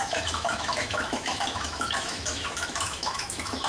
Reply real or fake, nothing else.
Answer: fake